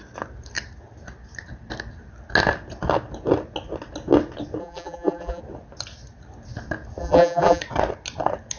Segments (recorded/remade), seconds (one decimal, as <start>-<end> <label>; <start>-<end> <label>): 0.0-4.6 recorded; 4.6-5.4 remade; 5.4-7.0 recorded; 7.0-7.6 remade; 7.6-8.6 recorded